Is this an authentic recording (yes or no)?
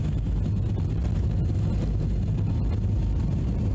yes